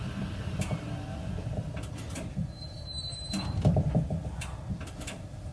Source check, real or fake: fake